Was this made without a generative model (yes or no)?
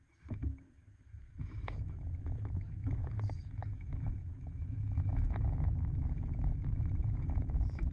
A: no